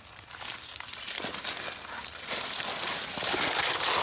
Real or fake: real